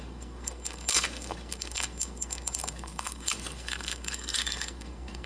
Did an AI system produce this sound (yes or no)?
yes